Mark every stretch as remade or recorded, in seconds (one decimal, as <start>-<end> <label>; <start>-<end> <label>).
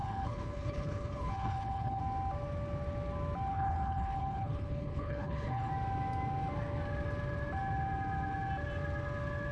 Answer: 0.0-2.0 remade; 2.0-3.5 recorded; 3.5-5.7 remade; 5.7-9.5 recorded